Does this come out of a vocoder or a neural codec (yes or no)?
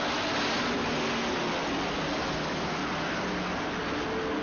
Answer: no